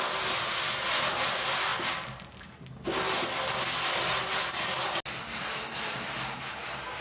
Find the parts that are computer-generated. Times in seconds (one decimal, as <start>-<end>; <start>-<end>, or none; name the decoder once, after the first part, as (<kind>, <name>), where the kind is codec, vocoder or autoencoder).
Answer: 0.0-1.7 (vocoder, BigVGAN v2); 5.9-7.0